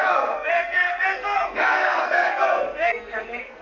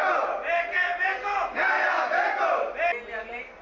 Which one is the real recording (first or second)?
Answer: second